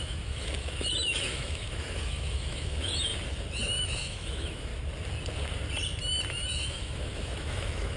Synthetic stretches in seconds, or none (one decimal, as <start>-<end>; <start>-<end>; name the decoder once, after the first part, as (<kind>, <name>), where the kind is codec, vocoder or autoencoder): 0.0-3.1 (autoencoder, DAC-VAE); 3.6-4.7; 6.3-8.0

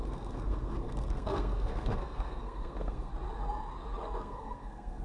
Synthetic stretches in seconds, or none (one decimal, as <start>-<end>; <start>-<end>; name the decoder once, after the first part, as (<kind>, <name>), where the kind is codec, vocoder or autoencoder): 0.0-3.1 (codec, SNAC); 4.2-5.0

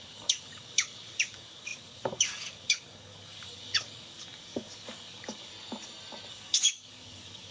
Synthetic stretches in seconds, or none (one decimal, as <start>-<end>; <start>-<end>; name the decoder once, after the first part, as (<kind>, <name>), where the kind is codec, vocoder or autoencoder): 0.0-5.5 (codec, DAC); 6.3-7.5

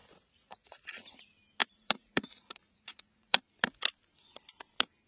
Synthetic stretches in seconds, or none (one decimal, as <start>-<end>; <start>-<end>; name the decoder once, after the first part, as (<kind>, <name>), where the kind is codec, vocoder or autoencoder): 0.0-1.2 (vocoder, Vocos); 1.6-3.4

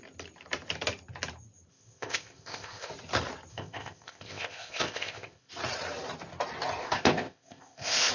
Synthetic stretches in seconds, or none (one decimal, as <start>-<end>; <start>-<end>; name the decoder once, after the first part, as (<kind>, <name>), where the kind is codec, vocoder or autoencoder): 1.7-2.9 (codec, ZipCodec); 3.5-5.5; 6.8-8.1

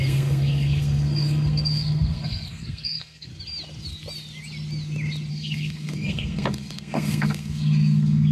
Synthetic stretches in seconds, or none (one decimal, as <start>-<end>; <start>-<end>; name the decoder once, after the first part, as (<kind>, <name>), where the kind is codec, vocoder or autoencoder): 0.0-3.3 (codec, SNAC); 5.3-8.3

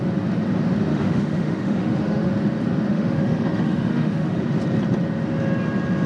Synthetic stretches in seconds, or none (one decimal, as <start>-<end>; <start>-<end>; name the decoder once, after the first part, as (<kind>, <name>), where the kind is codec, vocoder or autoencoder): 0.9-2.3 (autoencoder, DAC-VAE); 2.9-4.4

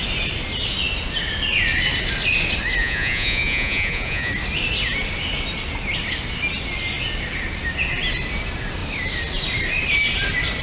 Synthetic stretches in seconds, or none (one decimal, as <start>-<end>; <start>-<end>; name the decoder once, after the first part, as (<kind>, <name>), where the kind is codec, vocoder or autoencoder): 2.8-4.3 (vocoder, Vocos)